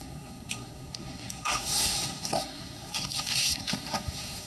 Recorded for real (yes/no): no